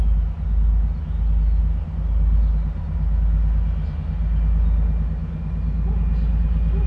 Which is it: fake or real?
real